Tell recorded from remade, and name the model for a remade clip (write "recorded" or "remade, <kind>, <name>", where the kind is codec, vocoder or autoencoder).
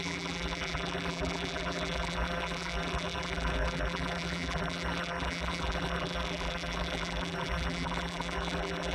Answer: remade, vocoder, BigVGAN v2